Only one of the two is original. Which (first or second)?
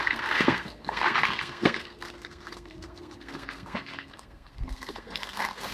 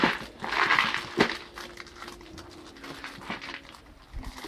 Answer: second